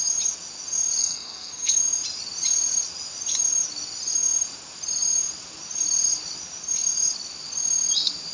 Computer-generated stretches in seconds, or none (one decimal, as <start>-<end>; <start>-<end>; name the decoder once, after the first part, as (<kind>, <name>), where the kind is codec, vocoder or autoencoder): 1.0-1.8 (codec, SNAC)